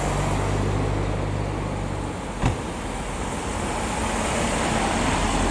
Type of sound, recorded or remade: recorded